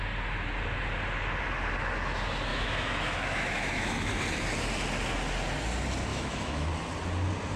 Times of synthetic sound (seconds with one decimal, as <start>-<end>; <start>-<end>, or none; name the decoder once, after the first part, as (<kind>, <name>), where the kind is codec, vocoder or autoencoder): 2.5-4.1 (autoencoder, DAC-VAE); 6.1-6.7

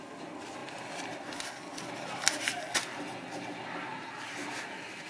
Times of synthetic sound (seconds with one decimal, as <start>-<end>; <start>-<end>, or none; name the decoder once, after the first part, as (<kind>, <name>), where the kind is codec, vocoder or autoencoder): none